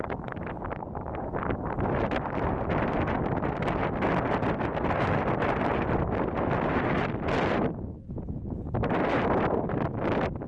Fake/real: real